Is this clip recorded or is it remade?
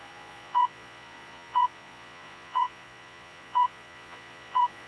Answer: remade